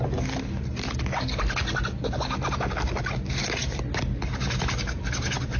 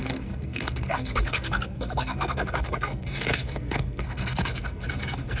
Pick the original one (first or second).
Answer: first